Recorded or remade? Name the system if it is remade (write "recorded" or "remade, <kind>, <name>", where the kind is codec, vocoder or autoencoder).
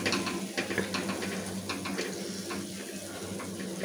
recorded